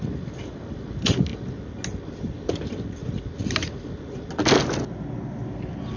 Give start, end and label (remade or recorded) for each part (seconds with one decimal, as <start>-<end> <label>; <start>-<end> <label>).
0.0-6.0 recorded